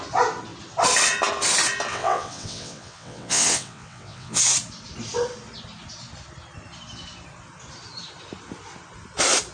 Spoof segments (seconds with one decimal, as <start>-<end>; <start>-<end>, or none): 1.9-4.4